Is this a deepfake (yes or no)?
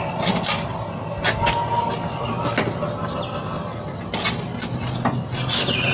no